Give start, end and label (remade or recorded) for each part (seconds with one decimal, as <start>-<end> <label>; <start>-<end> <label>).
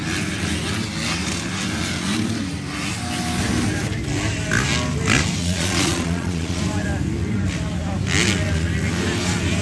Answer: 0.0-5.4 recorded; 5.4-6.6 remade; 6.6-9.6 recorded